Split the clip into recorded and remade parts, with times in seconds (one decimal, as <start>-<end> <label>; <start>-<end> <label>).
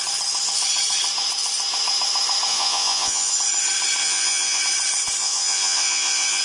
0.0-2.5 recorded; 2.5-3.3 remade; 3.3-4.0 recorded; 4.0-4.6 remade; 4.6-5.2 recorded; 5.2-6.4 remade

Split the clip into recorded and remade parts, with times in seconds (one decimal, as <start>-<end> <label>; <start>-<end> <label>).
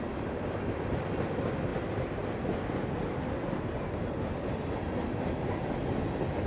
0.0-6.5 recorded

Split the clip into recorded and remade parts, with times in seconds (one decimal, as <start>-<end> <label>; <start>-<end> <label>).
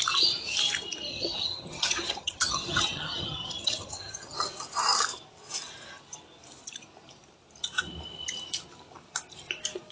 0.0-1.1 recorded; 1.1-4.5 remade; 4.5-9.9 recorded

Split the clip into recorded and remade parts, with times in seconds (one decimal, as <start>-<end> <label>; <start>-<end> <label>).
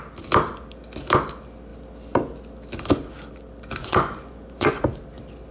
0.0-3.8 recorded; 3.8-4.7 remade; 4.7-5.5 recorded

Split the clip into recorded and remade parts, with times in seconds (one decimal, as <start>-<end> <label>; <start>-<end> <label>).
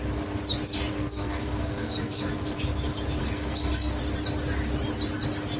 0.0-0.9 recorded; 0.9-2.3 remade; 2.3-3.2 recorded; 3.2-4.0 remade; 4.0-5.6 recorded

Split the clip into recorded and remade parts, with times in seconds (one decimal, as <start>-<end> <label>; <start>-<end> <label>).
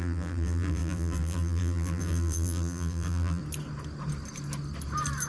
0.0-3.4 remade; 3.4-5.3 recorded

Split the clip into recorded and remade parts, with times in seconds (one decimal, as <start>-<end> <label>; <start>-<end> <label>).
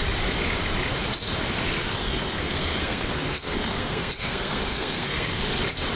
0.0-1.8 recorded; 1.8-5.4 remade; 5.4-6.0 recorded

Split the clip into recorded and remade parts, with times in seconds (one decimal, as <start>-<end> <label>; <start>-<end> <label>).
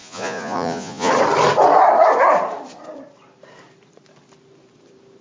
0.0-1.1 remade; 1.1-5.2 recorded